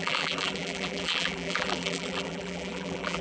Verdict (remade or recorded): remade